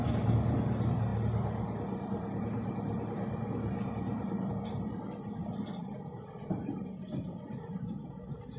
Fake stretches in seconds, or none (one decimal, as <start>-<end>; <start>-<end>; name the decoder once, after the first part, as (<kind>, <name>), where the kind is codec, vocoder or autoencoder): none

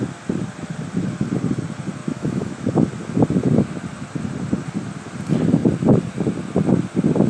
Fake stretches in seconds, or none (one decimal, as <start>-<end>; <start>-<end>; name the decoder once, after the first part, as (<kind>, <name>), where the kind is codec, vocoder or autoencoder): 2.0-2.7 (autoencoder, DAC-VAE)

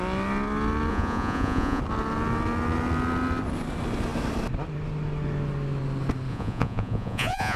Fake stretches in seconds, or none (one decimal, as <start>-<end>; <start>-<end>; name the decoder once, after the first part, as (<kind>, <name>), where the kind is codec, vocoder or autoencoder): 0.9-1.8 (vocoder, Vocos); 6.3-7.6

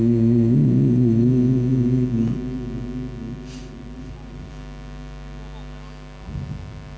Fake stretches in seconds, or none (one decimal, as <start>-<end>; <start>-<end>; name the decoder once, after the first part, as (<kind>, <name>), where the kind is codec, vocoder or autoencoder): 3.6-4.5 (vocoder, BigVGAN v2)